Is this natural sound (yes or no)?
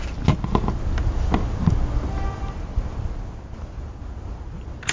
yes